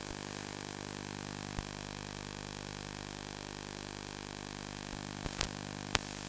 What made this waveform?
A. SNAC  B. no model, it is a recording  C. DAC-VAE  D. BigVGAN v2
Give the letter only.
B